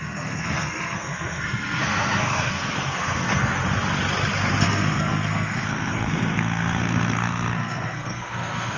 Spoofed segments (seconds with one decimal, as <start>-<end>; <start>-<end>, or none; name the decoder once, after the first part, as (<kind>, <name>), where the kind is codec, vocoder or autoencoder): 0.0-3.6 (codec, SNAC); 4.6-8.8